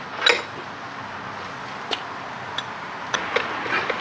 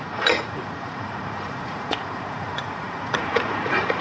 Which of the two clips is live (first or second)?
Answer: first